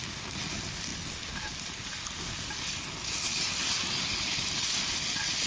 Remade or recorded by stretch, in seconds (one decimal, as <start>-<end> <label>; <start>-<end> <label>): 0.0-5.5 recorded